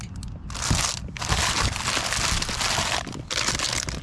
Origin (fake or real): real